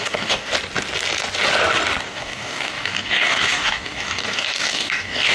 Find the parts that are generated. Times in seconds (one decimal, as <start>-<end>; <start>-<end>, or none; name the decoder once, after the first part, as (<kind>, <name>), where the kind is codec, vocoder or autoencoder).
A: 0.0-0.5 (codec, DAC); 2.0-5.3